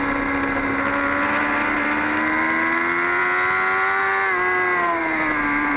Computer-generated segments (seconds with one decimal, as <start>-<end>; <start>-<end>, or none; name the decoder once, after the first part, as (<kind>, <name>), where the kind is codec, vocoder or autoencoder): none